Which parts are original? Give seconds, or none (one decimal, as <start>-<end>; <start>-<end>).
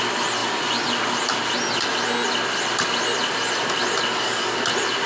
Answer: 0.0-4.1; 4.6-5.1